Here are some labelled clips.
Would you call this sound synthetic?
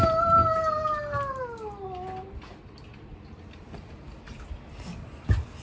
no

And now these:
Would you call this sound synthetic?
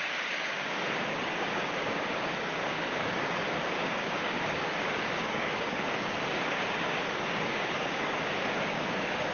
yes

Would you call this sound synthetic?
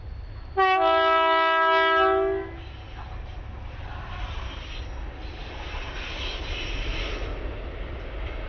no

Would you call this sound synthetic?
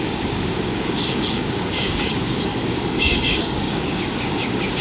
yes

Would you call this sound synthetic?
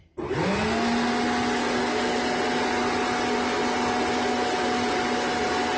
no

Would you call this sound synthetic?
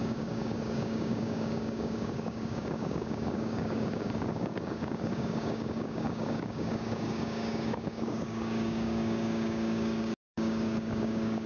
yes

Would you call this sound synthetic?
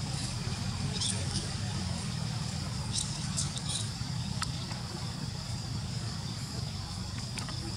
yes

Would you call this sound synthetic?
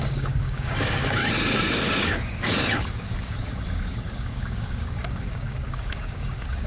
yes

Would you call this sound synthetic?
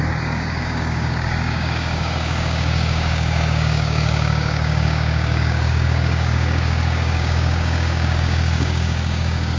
yes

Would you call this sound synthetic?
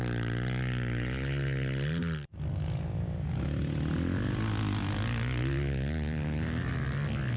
no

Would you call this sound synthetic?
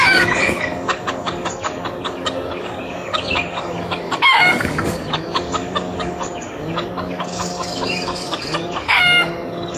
yes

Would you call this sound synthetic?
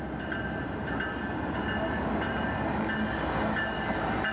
no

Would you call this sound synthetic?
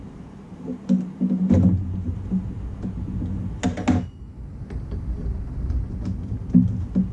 no